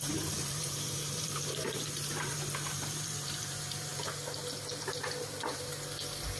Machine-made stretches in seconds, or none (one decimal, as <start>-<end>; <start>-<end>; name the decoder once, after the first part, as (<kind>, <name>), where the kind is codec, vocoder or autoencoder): 0.0-3.9 (vocoder, BigVGAN v2); 4.8-5.7